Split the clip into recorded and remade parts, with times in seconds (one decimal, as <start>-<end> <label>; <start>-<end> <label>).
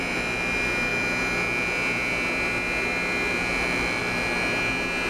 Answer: 0.0-5.1 recorded